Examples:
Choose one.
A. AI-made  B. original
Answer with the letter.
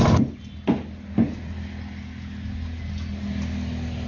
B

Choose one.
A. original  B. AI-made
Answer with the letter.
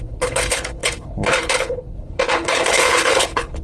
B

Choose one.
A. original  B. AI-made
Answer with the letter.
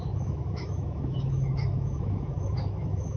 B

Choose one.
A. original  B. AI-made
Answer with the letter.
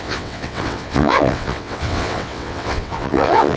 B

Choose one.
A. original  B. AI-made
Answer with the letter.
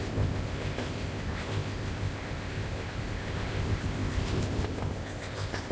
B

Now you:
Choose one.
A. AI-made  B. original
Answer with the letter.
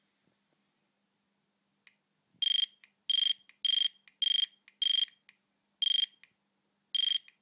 B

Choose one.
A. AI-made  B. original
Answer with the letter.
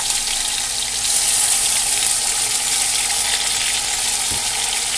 B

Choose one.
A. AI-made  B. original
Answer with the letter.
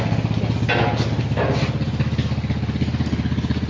B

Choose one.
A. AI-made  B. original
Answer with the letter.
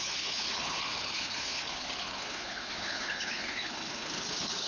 A